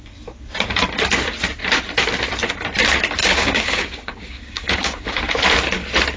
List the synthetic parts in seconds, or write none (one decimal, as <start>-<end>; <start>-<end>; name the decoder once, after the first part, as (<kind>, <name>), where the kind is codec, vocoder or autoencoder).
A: 3.2-5.2 (codec, DAC)